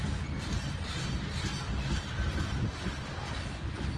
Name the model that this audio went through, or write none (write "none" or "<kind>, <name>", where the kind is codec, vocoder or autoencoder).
none